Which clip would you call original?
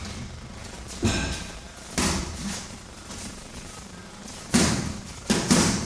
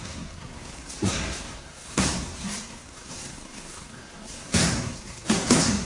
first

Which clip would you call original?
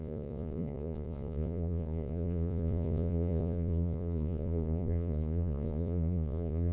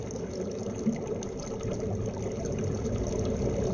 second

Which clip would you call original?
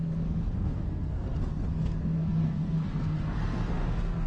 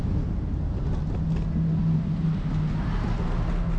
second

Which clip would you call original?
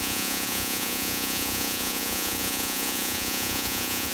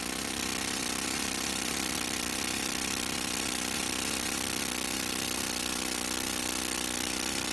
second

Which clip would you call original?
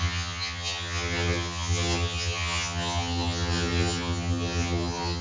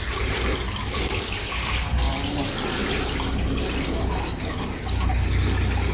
second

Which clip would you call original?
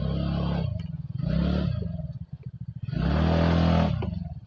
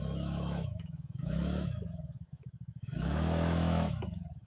first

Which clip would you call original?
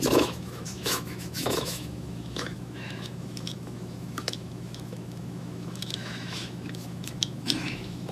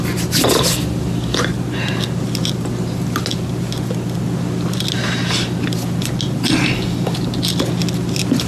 second